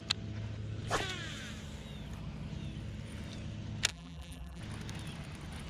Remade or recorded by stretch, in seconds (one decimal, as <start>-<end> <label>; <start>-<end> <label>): 0.0-3.9 recorded; 3.9-4.6 remade; 4.6-5.7 recorded